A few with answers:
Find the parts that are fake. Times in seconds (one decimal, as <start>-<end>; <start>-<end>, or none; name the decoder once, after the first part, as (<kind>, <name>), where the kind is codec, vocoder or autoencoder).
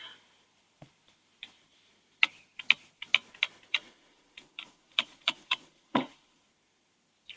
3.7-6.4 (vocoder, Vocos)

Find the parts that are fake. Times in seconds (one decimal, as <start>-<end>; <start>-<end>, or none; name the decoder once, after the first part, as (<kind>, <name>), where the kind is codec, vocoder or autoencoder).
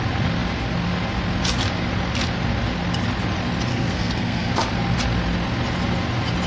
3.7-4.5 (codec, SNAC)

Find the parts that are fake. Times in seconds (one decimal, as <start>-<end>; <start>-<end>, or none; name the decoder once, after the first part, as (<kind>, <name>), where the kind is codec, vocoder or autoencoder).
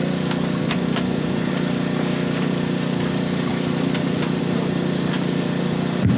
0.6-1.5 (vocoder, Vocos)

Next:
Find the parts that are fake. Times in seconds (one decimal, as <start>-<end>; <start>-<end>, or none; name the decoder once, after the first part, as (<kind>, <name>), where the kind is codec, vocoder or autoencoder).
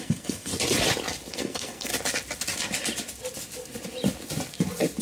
0.0-0.5 (codec, SNAC); 1.3-1.9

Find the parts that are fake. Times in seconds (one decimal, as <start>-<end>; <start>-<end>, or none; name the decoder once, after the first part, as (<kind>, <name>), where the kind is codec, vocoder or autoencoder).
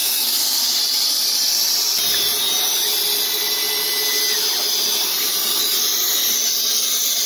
0.0-0.8 (codec, SNAC)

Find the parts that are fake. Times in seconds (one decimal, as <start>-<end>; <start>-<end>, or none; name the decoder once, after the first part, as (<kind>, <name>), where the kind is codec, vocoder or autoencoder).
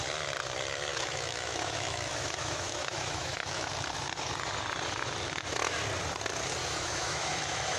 0.9-3.7 (autoencoder, DAC-VAE); 6.6-7.8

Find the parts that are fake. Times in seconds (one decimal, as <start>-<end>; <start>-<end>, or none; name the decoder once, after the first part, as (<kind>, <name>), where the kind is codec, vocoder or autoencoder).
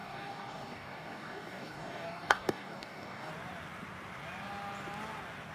0.0-3.3 (codec, DAC)